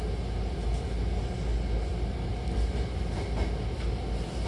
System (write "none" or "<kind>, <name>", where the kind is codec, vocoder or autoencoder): none